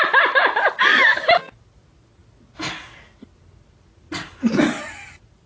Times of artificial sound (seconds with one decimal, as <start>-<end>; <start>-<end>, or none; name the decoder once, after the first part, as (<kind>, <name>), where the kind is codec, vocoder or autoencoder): none